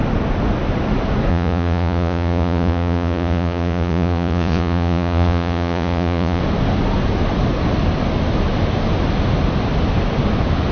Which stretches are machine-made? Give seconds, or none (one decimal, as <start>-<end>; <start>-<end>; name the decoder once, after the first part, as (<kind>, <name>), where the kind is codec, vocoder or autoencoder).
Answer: 1.3-6.4 (vocoder, Vocos)